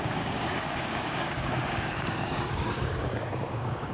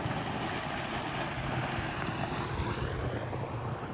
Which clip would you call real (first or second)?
second